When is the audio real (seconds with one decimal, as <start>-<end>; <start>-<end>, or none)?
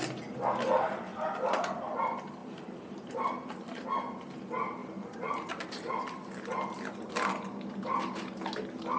0.0-2.4; 3.1-4.8; 5.9-9.0